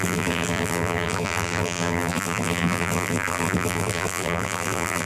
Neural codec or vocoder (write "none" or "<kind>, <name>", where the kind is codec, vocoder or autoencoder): vocoder, BigVGAN v2